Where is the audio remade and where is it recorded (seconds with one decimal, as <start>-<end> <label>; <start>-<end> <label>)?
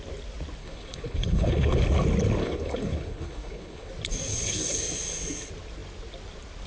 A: 0.0-0.6 recorded; 0.6-1.8 remade; 1.8-2.4 recorded; 2.4-3.9 remade; 3.9-4.3 recorded; 4.3-4.8 remade; 4.8-6.7 recorded